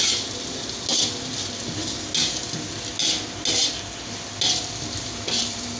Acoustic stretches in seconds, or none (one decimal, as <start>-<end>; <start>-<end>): 0.0-5.8